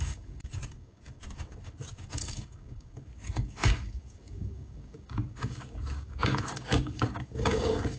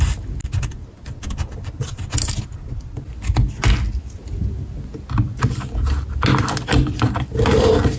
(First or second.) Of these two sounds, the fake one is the first